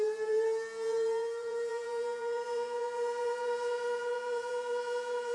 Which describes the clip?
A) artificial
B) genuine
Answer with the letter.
A